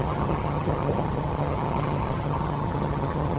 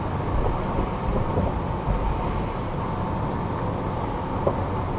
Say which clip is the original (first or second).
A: second